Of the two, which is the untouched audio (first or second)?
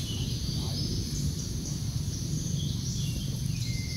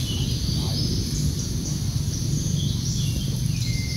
second